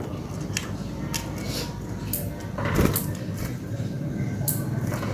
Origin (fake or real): real